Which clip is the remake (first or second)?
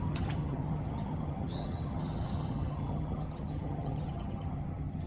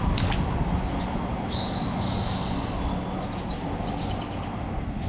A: first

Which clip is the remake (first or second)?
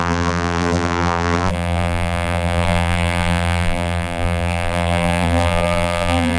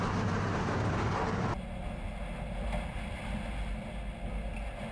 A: first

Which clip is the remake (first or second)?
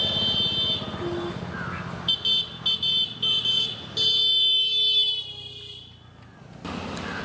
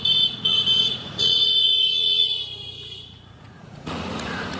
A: second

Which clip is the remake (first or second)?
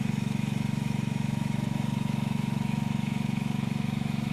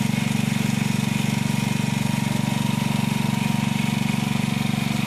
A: first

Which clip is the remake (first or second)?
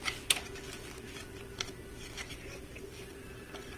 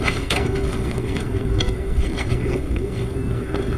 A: second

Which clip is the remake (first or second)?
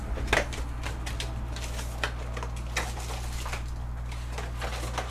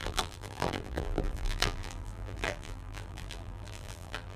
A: second